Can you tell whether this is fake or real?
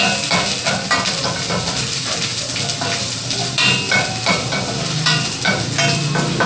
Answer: real